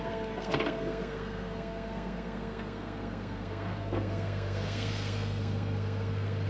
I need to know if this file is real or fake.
fake